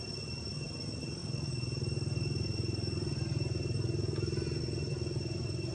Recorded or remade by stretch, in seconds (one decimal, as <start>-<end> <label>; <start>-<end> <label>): 0.0-5.7 recorded